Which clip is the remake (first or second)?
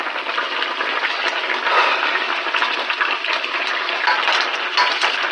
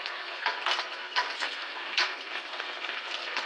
second